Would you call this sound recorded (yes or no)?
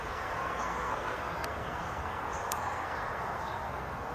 no